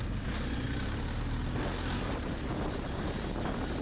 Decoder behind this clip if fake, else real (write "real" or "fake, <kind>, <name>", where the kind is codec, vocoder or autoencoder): real